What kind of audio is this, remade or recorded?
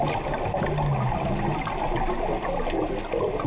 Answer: recorded